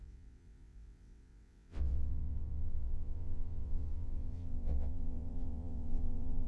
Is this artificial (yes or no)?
yes